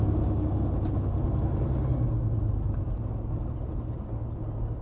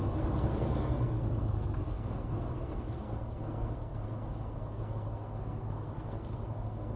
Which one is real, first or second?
first